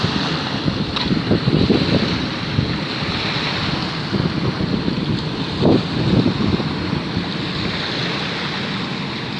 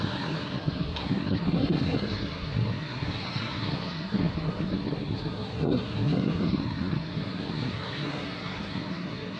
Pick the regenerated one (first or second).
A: second